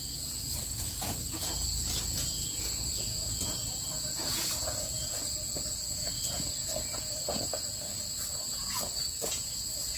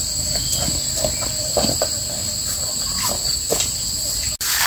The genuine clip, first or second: second